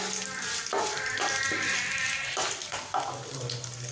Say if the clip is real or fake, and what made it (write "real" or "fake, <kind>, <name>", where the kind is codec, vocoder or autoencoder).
real